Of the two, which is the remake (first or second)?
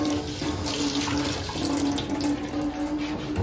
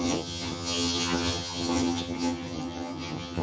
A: second